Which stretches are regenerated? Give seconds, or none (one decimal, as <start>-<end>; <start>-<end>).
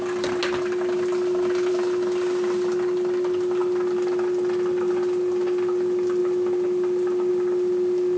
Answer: none